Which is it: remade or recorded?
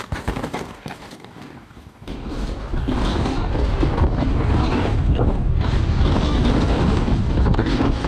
remade